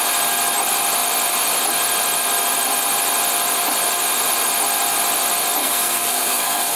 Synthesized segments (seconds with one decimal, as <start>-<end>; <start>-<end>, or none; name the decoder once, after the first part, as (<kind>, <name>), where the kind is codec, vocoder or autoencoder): 5.6-6.8 (codec, SNAC)